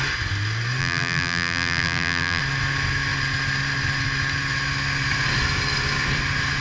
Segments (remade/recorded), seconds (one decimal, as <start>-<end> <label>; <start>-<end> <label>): 0.0-0.8 recorded; 0.8-2.4 remade; 2.4-6.6 recorded